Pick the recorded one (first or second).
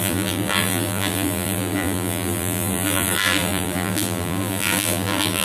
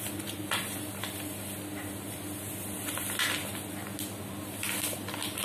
second